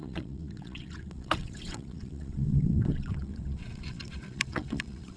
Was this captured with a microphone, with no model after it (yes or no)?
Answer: no